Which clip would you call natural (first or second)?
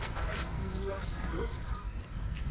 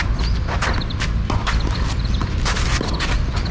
second